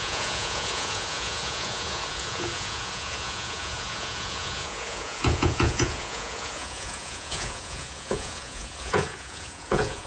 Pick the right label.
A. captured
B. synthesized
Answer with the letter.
B